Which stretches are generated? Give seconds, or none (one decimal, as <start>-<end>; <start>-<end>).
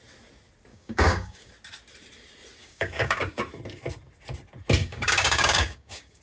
0.7-1.5; 2.6-3.4; 4.8-6.2